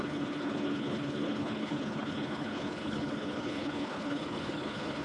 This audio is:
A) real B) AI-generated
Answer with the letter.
B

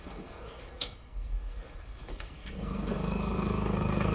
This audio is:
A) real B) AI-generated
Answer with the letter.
B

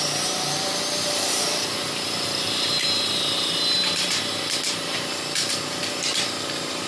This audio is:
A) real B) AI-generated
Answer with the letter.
A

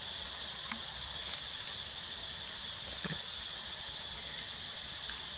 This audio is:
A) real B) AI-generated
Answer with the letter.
A